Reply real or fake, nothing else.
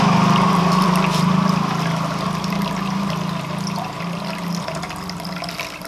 fake